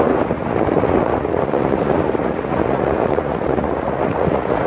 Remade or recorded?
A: remade